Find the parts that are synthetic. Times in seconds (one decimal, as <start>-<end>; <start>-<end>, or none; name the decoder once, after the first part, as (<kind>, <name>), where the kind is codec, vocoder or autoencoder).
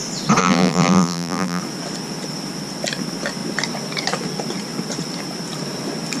0.4-1.6 (vocoder, BigVGAN v2)